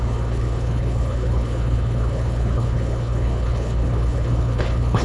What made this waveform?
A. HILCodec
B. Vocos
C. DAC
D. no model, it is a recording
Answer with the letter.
A